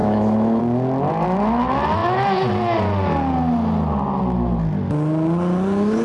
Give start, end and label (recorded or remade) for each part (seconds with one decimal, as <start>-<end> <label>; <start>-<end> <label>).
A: 0.0-0.6 remade; 0.6-6.0 recorded